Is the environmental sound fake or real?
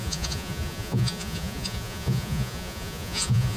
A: fake